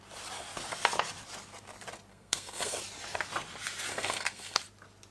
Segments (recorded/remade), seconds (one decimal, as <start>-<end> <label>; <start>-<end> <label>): 0.0-2.1 recorded; 2.1-2.8 remade; 2.8-3.9 recorded; 3.9-4.6 remade; 4.6-5.1 recorded